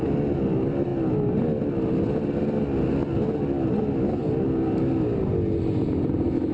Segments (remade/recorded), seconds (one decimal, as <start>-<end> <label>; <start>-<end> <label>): 0.0-6.5 recorded